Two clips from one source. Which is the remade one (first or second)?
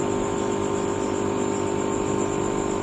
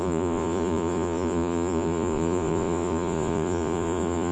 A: second